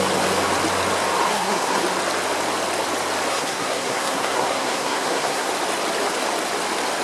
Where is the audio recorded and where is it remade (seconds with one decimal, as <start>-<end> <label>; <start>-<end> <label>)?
0.0-1.3 recorded; 1.3-1.8 remade; 1.8-3.3 recorded; 3.3-5.5 remade; 5.5-7.0 recorded